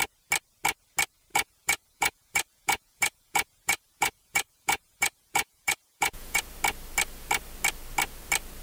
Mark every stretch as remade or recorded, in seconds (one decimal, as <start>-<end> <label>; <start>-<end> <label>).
0.0-1.3 recorded; 1.3-6.4 remade; 6.4-8.6 recorded